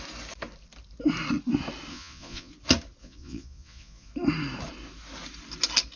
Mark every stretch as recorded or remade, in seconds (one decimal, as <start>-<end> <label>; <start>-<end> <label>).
0.0-1.9 recorded; 1.9-2.5 remade; 2.5-3.0 recorded; 3.0-4.1 remade; 4.1-6.0 recorded